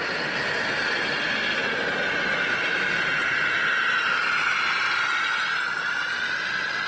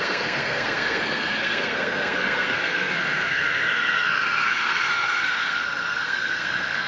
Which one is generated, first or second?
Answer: second